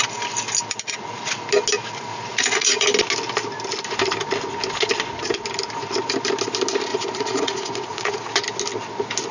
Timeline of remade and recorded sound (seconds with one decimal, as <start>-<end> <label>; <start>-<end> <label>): 0.0-2.1 recorded; 2.1-2.8 remade; 2.8-6.9 recorded; 6.9-8.3 remade; 8.3-9.3 recorded